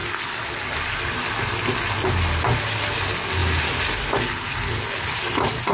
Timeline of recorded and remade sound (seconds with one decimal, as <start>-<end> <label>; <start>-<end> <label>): 0.0-5.7 recorded